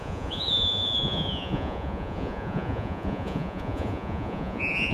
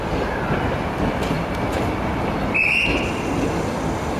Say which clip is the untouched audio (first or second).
second